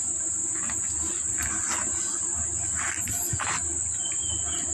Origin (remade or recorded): recorded